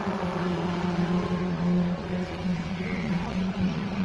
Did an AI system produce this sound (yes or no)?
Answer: yes